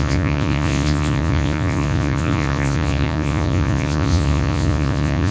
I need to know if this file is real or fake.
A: fake